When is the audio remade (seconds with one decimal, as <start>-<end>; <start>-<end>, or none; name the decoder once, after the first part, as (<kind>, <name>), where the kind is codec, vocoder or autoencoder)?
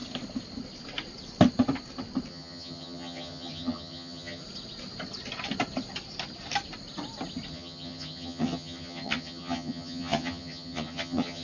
2.3-4.4 (vocoder, HiFi-GAN); 7.5-11.4